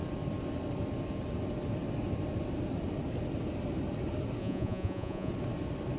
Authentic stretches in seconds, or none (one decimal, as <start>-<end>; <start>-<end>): 0.0-4.4; 5.3-6.0